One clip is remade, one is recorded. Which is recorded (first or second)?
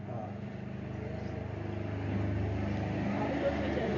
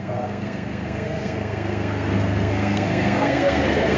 first